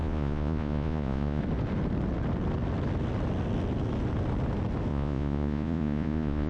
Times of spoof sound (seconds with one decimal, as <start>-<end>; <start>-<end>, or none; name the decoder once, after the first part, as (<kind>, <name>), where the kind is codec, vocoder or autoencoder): 0.0-1.4 (vocoder, Vocos); 4.9-6.5